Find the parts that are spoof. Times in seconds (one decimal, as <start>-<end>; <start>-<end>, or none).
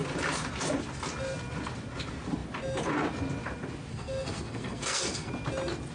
3.9-5.3